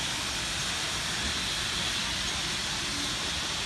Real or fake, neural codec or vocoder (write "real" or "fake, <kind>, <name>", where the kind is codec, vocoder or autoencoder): real